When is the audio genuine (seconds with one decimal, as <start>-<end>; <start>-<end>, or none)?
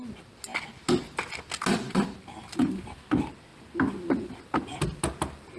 0.0-5.6